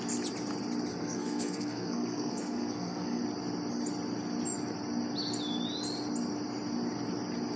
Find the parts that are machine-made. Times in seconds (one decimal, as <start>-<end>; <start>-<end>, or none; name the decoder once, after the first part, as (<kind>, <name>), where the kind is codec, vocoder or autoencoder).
0.9-3.2 (codec, SNAC)